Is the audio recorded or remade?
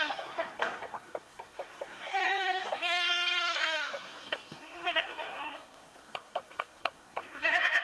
remade